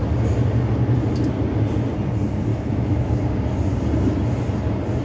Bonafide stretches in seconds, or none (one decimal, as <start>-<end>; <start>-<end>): 0.0-2.5; 3.1-5.0